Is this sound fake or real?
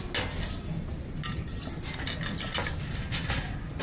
real